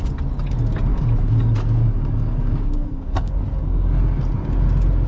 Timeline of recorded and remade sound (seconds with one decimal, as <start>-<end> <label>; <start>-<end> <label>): 0.0-0.9 recorded; 0.9-4.0 remade; 4.0-5.1 recorded